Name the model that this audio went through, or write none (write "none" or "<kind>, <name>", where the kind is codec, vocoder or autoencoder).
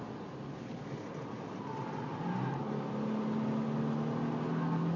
none